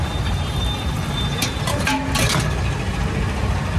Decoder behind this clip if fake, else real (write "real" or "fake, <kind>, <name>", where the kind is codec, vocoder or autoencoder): real